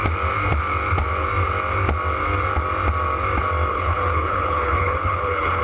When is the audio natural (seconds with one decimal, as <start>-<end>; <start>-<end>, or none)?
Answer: 0.0-3.7